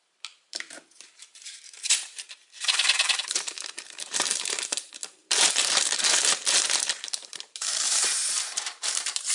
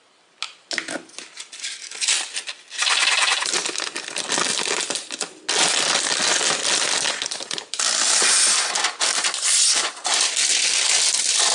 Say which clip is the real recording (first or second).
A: second